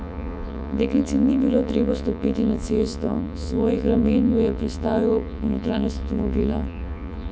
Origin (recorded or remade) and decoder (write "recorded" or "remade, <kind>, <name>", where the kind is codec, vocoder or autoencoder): remade, vocoder, Vocos